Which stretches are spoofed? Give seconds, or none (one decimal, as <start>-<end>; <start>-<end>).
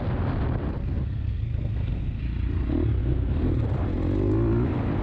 0.8-2.2; 3.0-3.5